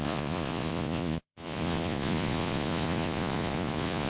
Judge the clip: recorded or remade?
remade